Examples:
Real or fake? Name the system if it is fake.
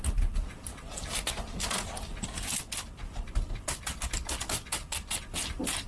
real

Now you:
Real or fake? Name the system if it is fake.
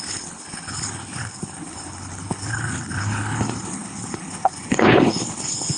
fake, codec, HILCodec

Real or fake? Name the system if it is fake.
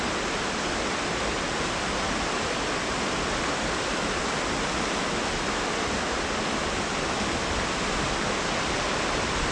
real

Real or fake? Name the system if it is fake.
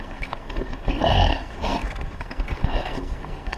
fake, codec, SNAC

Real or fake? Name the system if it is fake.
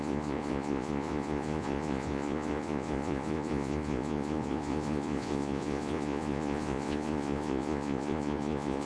fake, vocoder, Vocos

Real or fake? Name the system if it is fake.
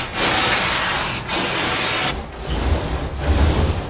real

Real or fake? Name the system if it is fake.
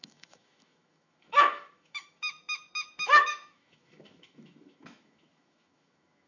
fake, autoencoder, DAC-VAE